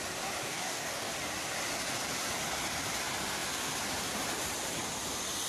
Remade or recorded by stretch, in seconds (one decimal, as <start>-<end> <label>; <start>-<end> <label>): 0.0-0.4 recorded; 0.4-1.1 remade; 1.1-5.5 recorded